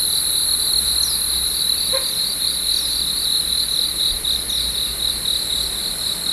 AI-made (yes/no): no